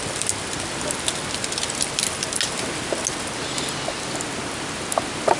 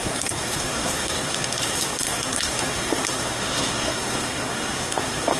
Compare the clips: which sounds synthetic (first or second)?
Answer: second